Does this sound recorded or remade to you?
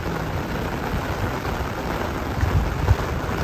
recorded